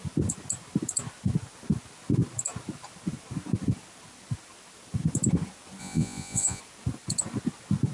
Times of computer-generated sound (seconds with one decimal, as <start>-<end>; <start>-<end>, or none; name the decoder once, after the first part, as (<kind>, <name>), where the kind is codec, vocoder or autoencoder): 5.8-6.6 (vocoder, Vocos)